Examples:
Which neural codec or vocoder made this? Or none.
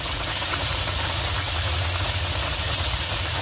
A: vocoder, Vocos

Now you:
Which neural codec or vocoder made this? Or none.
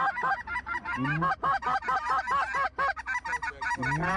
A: none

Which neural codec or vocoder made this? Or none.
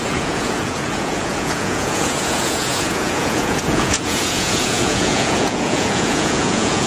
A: vocoder, Vocos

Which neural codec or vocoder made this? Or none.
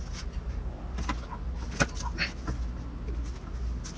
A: none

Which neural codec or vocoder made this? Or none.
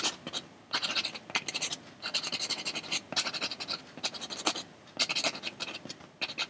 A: none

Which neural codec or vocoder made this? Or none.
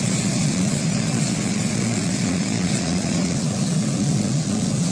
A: vocoder, Vocos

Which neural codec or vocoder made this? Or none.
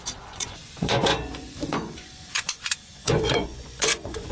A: vocoder, Vocos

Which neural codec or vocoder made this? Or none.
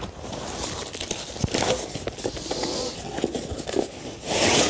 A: none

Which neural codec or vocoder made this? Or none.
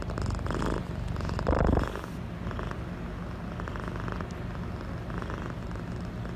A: none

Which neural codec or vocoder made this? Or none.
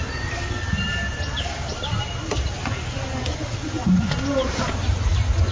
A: none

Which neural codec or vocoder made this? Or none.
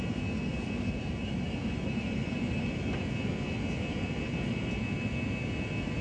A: none